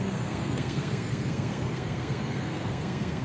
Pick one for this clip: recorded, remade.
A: remade